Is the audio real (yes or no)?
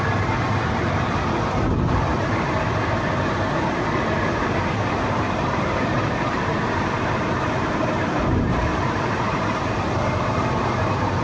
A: no